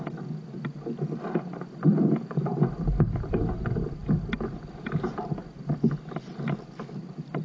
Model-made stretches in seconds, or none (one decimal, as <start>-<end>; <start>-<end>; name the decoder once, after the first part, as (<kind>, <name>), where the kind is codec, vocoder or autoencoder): none